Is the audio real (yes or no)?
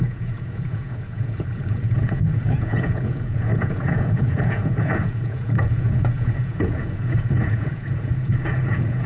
no